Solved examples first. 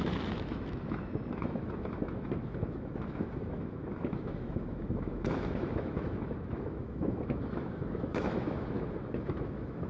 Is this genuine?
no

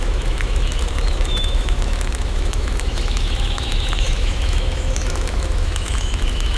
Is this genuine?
no